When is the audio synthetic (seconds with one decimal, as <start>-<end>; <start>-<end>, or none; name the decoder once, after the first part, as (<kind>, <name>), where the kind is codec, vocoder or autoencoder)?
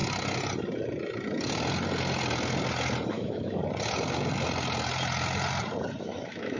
3.1-3.6 (autoencoder, DAC-VAE); 6.0-6.6